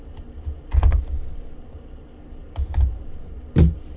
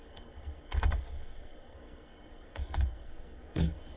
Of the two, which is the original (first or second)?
first